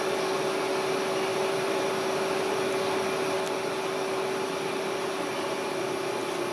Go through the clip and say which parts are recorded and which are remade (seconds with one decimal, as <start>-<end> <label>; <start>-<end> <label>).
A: 0.0-1.3 recorded; 1.3-1.9 remade; 1.9-6.5 recorded